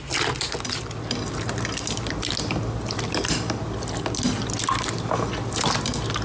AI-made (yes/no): no